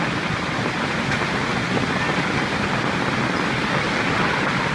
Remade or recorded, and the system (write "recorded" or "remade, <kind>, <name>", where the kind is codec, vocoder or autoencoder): recorded